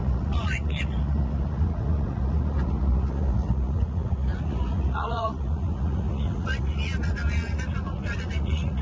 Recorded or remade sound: remade